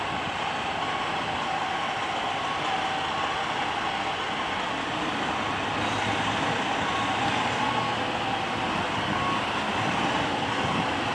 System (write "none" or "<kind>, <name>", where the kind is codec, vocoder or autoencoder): none